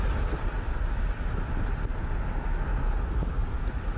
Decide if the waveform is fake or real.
real